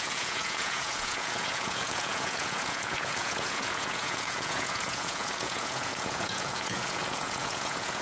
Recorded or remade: remade